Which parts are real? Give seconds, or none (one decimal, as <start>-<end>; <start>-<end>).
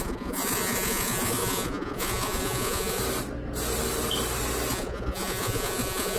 3.0-4.7